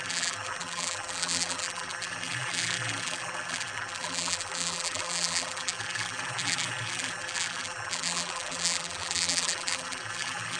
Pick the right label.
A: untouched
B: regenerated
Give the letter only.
B